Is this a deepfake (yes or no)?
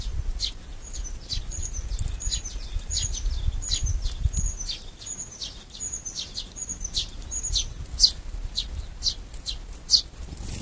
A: no